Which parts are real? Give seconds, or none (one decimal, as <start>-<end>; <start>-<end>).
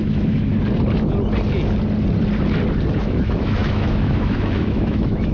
0.5-3.0